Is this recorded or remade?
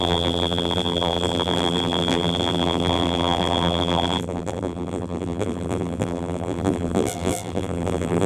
remade